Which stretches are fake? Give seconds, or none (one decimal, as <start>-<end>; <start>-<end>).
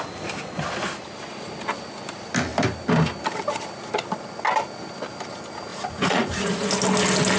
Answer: 5.7-6.7